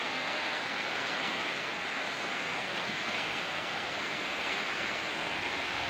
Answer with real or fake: fake